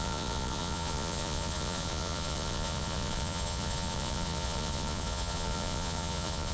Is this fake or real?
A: fake